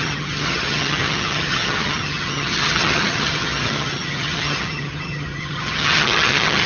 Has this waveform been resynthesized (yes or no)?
yes